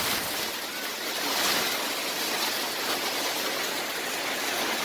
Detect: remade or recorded recorded